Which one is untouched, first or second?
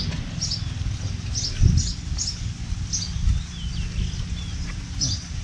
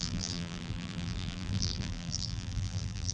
first